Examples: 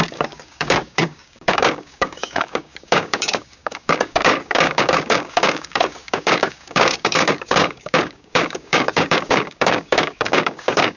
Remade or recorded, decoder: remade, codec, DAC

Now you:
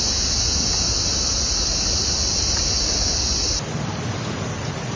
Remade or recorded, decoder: recorded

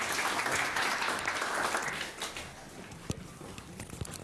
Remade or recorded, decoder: recorded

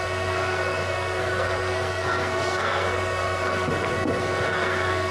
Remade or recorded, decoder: remade, codec, SNAC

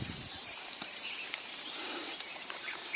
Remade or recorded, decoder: remade, vocoder, BigVGAN v2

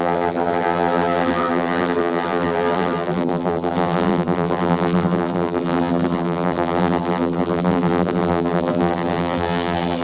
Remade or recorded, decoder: remade, vocoder, BigVGAN v2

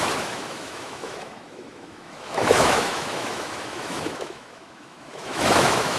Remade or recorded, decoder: remade, autoencoder, DAC-VAE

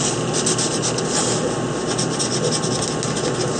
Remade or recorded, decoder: recorded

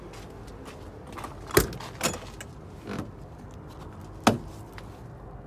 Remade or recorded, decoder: recorded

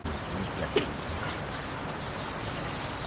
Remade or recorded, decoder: recorded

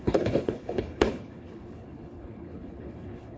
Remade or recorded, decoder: remade, codec, HILCodec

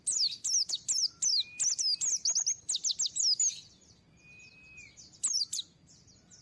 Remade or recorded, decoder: recorded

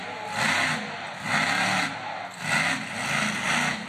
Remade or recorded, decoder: recorded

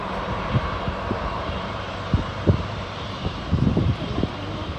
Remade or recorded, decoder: remade, vocoder, BigVGAN v2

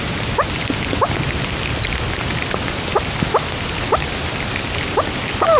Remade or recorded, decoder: recorded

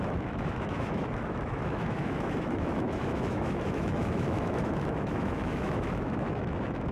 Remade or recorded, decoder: remade, autoencoder, DAC-VAE